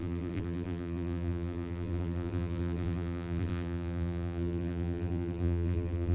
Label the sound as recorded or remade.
remade